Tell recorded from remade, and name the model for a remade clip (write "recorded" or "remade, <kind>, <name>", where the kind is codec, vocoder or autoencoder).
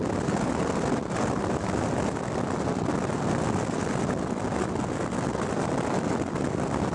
recorded